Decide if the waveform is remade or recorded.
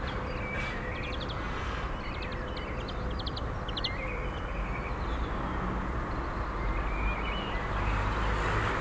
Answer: recorded